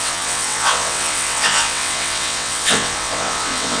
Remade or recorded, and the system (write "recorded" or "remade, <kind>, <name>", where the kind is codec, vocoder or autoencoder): remade, vocoder, WaveNeXt